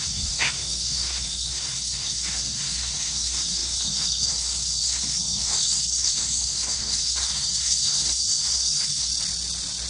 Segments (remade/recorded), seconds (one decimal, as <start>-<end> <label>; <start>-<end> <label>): 0.0-9.1 remade; 9.1-9.9 recorded